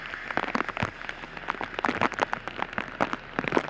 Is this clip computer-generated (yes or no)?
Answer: no